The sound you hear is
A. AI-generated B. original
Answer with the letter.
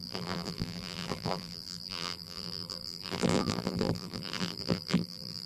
A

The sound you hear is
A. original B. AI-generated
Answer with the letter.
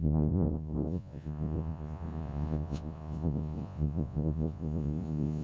B